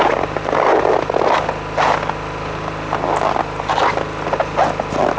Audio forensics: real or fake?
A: real